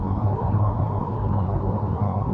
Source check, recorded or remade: remade